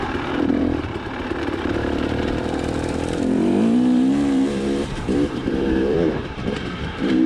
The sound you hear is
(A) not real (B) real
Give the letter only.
A